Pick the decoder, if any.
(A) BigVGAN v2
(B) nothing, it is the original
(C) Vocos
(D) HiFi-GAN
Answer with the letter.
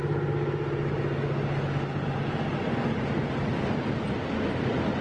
B